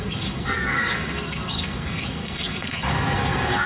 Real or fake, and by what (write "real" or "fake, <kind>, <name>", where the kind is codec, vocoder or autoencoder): fake, codec, SNAC